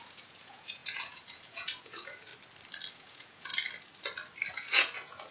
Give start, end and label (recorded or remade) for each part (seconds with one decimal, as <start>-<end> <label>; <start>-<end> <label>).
0.0-2.3 remade; 2.3-2.9 recorded; 2.9-3.5 remade; 3.5-4.5 recorded; 4.5-5.3 remade